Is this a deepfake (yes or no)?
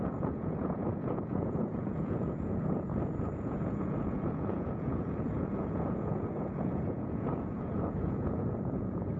yes